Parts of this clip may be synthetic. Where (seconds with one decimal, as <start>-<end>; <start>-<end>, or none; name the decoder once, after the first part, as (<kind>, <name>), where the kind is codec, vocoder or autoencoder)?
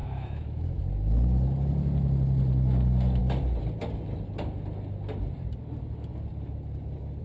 0.0-0.8 (autoencoder, DAC-VAE)